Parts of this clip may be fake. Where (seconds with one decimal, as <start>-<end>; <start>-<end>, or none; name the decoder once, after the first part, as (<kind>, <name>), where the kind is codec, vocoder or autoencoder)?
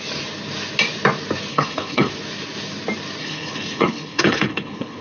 1.5-2.1 (codec, HILCodec); 3.2-5.0